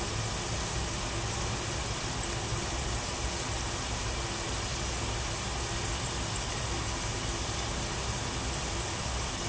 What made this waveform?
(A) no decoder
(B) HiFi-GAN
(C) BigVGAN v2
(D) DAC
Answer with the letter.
A